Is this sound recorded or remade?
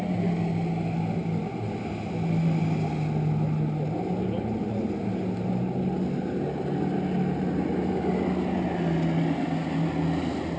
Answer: recorded